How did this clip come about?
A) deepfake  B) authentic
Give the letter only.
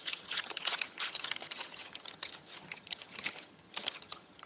A